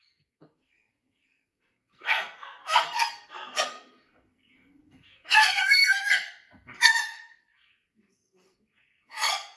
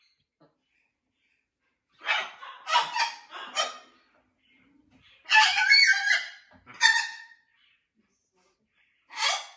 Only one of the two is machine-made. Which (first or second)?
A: first